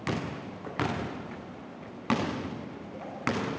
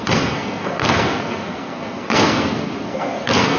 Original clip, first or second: first